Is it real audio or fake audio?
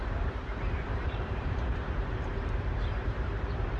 fake